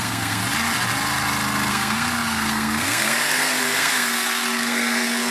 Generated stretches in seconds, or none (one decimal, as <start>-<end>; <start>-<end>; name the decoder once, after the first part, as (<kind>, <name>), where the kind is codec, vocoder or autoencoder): 0.0-0.4 (codec, SNAC); 1.7-5.3